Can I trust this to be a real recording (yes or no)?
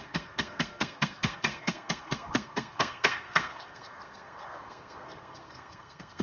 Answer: no